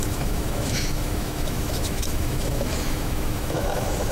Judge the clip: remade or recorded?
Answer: remade